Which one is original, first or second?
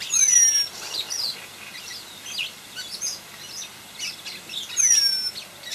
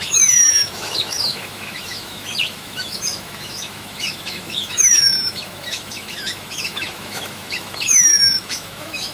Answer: first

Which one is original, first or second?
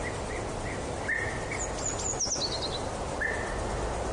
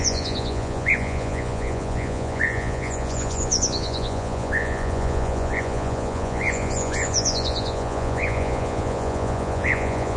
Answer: first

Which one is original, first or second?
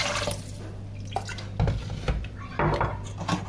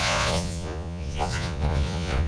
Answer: first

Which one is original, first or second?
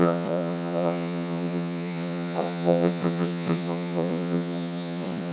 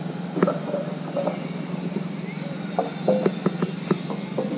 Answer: second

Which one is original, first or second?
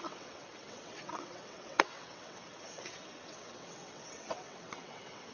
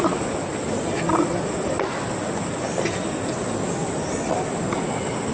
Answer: second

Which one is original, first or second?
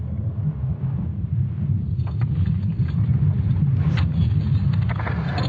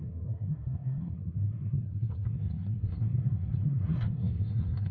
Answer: first